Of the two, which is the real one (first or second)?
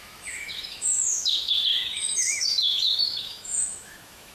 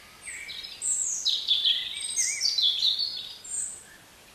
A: second